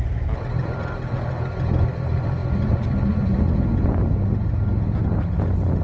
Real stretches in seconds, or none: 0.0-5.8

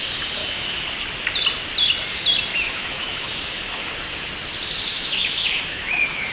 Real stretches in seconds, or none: 0.0-0.4; 0.9-2.5; 4.1-4.9